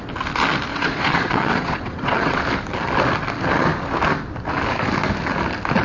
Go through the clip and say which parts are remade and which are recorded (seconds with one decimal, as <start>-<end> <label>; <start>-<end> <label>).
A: 0.0-0.7 recorded; 0.7-2.4 remade; 2.4-5.8 recorded